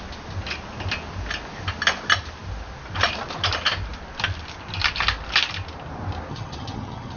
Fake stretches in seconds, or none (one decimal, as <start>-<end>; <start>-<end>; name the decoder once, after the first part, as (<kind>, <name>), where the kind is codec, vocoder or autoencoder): 6.3-7.2 (vocoder, HiFi-GAN)